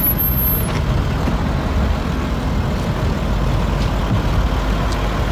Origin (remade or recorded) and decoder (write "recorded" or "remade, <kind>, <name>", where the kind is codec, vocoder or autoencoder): recorded